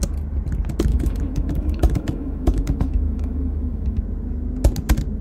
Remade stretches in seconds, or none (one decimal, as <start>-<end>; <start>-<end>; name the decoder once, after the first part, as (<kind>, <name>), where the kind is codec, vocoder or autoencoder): 0.9-4.0 (autoencoder, DAC-VAE)